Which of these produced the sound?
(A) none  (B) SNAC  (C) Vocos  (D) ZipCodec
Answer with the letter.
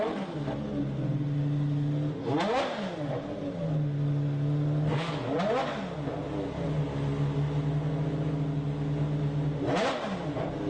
A